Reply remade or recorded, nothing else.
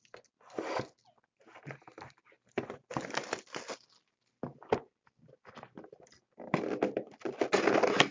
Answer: recorded